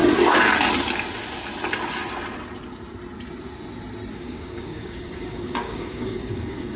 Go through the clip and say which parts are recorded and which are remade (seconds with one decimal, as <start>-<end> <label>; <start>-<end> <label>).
0.0-4.1 recorded; 4.1-6.8 remade